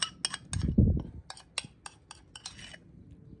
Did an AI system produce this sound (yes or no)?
no